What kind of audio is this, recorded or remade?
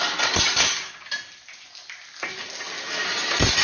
recorded